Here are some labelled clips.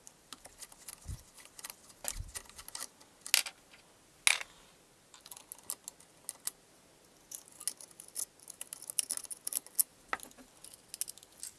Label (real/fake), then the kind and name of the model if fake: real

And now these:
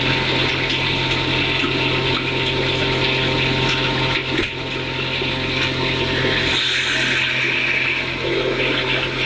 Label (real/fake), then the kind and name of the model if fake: real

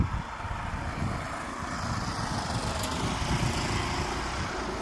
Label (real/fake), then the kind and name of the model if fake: real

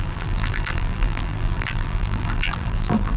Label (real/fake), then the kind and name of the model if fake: fake, vocoder, BigVGAN v2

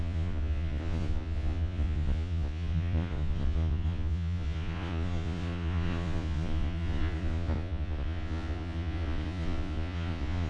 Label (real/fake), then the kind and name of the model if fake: fake, vocoder, Vocos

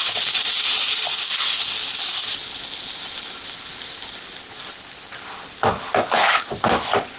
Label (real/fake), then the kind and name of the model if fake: real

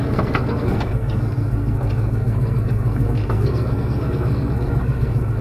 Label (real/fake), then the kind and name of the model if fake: fake, codec, SNAC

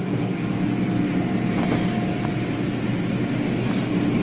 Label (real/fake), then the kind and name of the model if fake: real